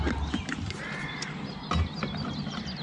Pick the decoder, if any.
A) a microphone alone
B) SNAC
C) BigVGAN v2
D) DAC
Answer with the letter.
A